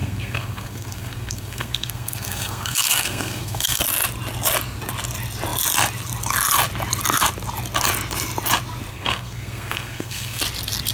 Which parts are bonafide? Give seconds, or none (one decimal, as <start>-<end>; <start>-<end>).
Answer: 3.8-8.9; 10.4-10.9